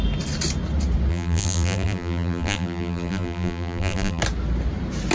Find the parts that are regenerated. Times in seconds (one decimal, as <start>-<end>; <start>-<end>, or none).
1.1-4.2